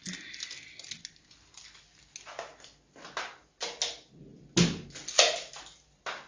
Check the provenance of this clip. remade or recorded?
recorded